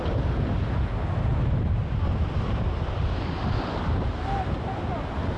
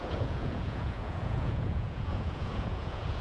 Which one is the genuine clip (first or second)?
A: first